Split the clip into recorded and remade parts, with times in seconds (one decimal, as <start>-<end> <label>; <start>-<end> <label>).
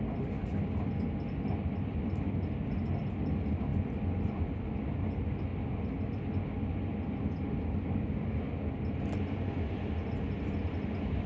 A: 0.0-11.3 recorded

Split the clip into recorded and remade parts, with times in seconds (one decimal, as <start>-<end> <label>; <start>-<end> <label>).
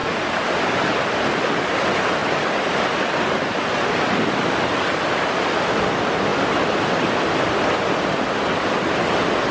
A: 0.0-2.2 recorded; 2.2-4.8 remade; 4.8-9.5 recorded